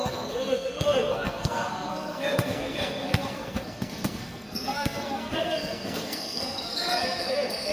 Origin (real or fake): fake